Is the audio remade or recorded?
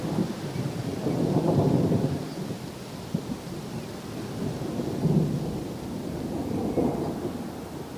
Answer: recorded